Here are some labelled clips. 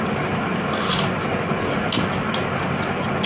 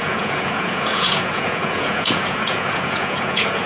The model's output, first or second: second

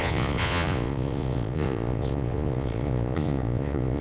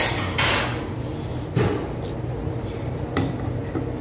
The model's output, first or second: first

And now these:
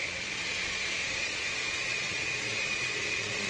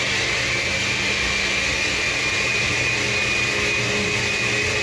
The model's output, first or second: first